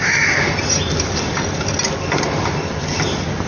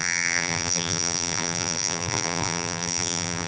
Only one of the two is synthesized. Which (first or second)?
second